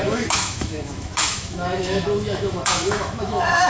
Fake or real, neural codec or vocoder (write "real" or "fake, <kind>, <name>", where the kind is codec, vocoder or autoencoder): fake, autoencoder, DAC-VAE